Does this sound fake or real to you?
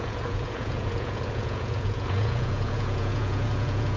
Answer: fake